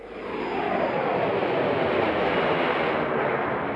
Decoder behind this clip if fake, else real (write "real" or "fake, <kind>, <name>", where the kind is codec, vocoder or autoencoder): real